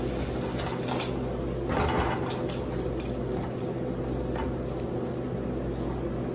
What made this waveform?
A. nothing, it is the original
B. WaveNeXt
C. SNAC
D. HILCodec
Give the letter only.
A